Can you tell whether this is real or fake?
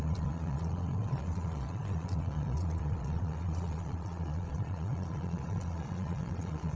fake